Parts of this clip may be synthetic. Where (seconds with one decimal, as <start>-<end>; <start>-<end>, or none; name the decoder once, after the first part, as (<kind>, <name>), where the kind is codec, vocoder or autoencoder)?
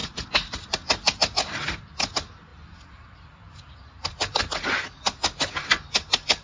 0.0-1.2 (vocoder, BigVGAN v2)